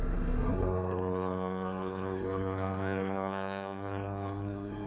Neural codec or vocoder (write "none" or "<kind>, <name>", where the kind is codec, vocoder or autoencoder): codec, SNAC